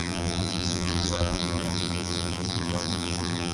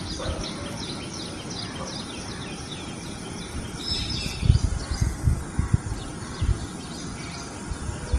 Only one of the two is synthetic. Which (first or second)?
first